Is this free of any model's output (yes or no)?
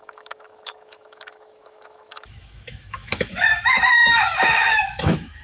no